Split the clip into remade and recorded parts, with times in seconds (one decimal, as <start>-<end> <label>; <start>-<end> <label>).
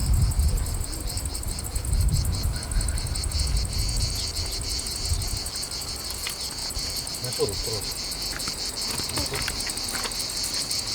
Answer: 0.0-10.9 recorded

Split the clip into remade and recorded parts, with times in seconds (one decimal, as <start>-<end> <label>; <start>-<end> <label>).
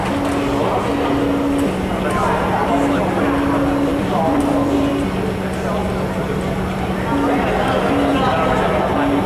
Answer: 0.0-3.9 recorded; 3.9-4.9 remade; 4.9-9.3 recorded